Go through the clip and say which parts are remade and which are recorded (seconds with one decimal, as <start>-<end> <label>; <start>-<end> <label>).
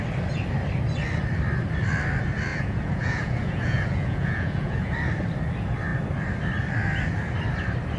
0.0-2.5 recorded; 2.5-4.9 remade; 4.9-8.0 recorded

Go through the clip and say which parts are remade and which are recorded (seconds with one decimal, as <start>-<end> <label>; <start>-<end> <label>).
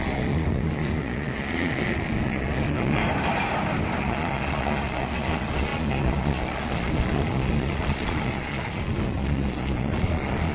0.0-3.0 remade; 3.0-4.0 recorded; 4.0-10.5 remade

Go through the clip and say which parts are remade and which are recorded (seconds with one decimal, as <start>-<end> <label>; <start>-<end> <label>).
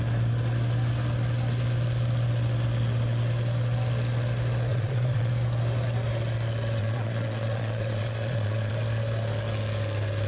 0.0-4.7 recorded; 4.7-5.3 remade; 5.3-6.8 recorded; 6.8-8.7 remade; 8.7-10.3 recorded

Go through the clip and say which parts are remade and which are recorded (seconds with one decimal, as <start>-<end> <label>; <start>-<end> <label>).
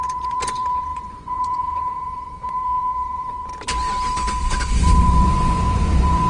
0.0-3.5 remade; 3.5-4.4 recorded; 4.4-6.3 remade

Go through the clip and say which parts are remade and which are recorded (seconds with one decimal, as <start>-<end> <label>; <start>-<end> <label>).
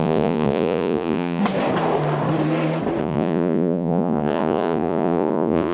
0.0-1.4 remade; 1.4-3.0 recorded; 3.0-5.7 remade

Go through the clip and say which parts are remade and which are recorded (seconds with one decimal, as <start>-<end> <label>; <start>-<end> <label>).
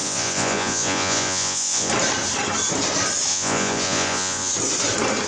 0.0-1.9 remade; 1.9-3.3 recorded; 3.3-4.5 remade; 4.5-5.3 recorded